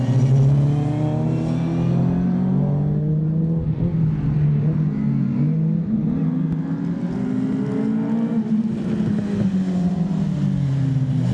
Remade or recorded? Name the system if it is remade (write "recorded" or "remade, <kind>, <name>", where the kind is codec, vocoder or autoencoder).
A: recorded